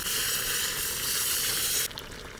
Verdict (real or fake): real